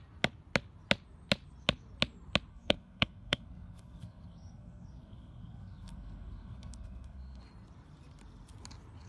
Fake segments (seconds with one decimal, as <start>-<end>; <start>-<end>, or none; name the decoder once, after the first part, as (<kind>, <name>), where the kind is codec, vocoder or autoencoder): 2.5-7.4 (codec, SNAC)